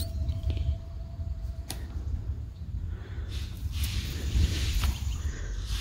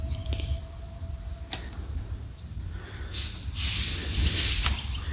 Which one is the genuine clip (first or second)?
second